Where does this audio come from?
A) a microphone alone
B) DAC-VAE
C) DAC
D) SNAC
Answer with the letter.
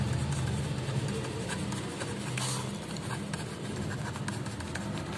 A